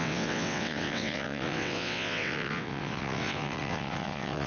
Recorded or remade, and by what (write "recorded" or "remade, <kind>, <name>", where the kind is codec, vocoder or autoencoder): remade, vocoder, WaveNeXt